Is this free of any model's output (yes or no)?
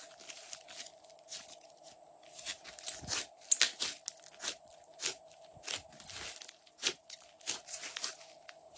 yes